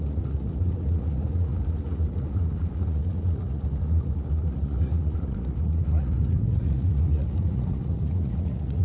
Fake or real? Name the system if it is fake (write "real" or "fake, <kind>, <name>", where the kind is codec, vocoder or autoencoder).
fake, vocoder, Vocos